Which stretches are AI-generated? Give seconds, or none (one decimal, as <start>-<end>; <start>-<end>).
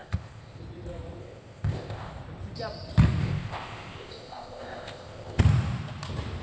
0.0-0.6; 1.2-2.1; 3.2-5.4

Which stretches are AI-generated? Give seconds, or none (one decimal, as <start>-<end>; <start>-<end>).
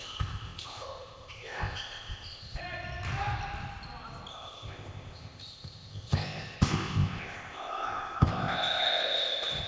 0.0-2.6; 4.3-9.7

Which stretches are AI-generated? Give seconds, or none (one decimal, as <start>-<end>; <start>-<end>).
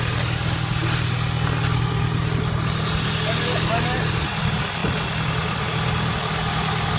none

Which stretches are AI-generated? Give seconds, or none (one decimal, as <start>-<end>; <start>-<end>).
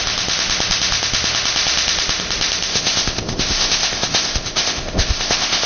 2.7-5.7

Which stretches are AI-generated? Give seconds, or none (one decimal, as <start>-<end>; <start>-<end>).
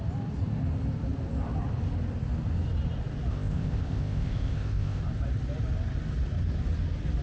3.3-5.0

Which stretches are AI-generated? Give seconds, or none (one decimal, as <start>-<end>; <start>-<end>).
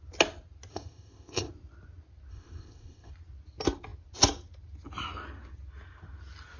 0.7-1.5; 2.3-3.1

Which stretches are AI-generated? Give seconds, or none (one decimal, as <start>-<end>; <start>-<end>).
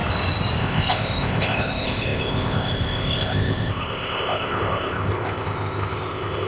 0.6-6.5